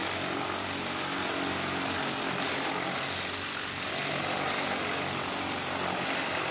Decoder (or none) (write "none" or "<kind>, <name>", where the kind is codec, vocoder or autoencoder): none